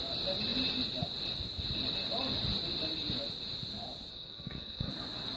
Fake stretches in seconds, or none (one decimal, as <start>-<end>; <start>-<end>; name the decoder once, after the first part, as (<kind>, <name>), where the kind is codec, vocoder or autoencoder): 4.1-4.9 (codec, SNAC)